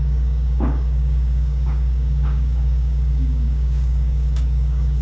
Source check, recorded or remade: remade